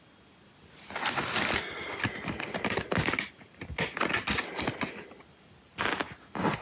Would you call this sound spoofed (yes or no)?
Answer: no